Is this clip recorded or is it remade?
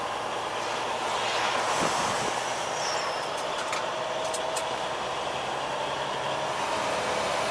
recorded